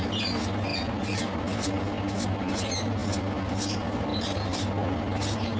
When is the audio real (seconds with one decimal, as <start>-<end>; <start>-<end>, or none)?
0.0-0.7; 1.4-4.1; 4.7-5.6